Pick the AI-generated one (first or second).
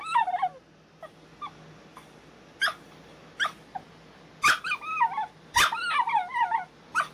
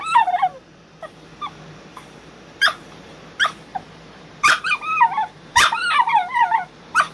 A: second